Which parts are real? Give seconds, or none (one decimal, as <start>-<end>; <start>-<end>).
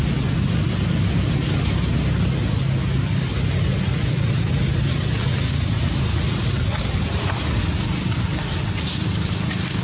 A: 0.0-9.8